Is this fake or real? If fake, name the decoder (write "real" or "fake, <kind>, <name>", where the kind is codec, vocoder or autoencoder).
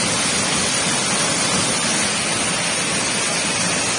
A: real